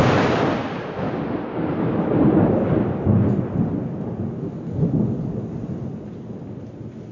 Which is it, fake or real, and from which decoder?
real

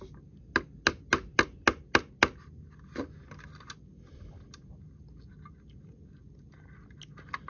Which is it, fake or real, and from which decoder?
real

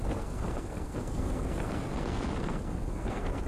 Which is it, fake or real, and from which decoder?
fake, codec, SNAC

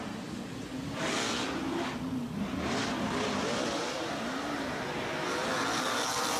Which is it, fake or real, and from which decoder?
real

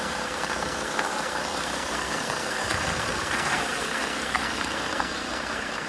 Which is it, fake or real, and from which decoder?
fake, codec, SNAC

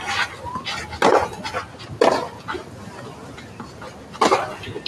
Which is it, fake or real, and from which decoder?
real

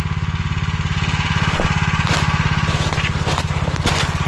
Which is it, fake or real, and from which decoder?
real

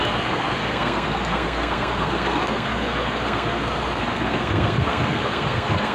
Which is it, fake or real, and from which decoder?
fake, codec, SNAC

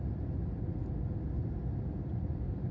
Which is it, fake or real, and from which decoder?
real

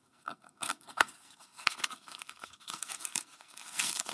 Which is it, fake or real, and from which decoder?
fake, codec, SNAC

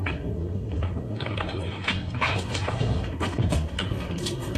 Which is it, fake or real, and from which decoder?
fake, codec, SNAC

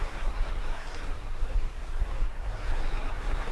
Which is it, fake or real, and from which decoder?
fake, codec, SNAC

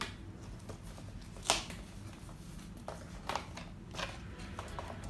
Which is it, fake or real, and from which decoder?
real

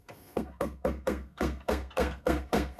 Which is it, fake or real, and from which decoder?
fake, codec, SNAC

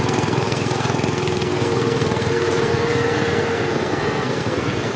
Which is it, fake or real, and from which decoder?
fake, codec, SNAC